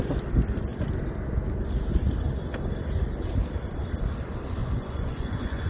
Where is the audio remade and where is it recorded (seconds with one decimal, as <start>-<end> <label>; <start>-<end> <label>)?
0.0-4.6 recorded; 4.6-5.7 remade